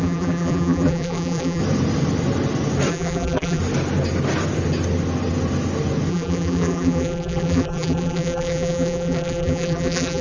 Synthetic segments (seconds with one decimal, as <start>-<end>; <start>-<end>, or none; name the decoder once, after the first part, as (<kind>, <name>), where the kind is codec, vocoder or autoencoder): 0.0-1.6 (vocoder, BigVGAN v2); 2.9-3.6; 6.1-10.2

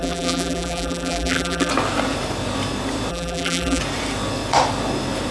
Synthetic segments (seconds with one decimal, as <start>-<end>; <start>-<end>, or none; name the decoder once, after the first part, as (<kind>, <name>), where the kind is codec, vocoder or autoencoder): 0.0-1.7 (vocoder, BigVGAN v2); 3.1-3.8

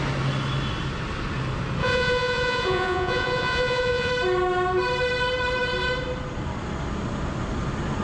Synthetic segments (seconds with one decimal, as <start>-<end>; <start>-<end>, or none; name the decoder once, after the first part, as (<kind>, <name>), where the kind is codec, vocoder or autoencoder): 1.8-4.1 (vocoder, Vocos)

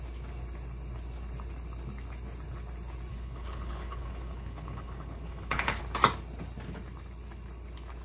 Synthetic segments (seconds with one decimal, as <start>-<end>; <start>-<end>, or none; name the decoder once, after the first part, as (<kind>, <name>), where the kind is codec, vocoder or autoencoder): 3.1-5.8 (codec, HILCodec)

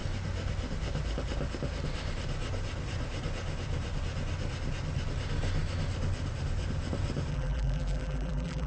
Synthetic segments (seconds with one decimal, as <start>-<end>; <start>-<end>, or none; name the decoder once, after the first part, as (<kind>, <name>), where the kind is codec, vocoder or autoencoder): 7.3-8.7 (vocoder, BigVGAN v2)

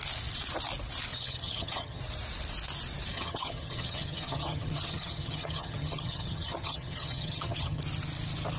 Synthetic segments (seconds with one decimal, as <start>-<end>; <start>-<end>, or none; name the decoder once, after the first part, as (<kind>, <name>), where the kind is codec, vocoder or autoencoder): 1.1-2.0 (vocoder, HiFi-GAN); 3.1-7.8